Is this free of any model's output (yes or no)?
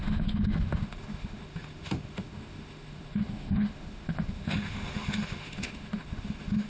no